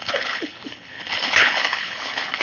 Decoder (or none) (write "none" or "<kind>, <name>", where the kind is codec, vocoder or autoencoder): codec, HILCodec